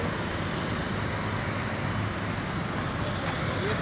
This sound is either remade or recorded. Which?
recorded